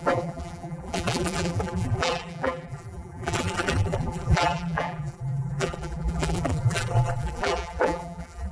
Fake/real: fake